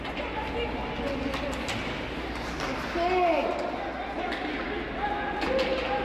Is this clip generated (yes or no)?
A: no